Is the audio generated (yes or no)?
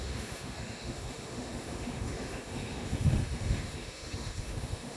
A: yes